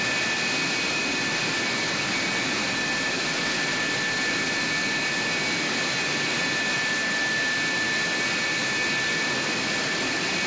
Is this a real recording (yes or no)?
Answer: yes